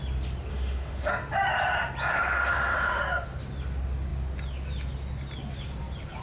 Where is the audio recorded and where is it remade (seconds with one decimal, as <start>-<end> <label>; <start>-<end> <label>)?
0.0-0.5 recorded; 0.5-1.1 remade; 1.1-2.1 recorded; 2.1-3.0 remade; 3.0-6.2 recorded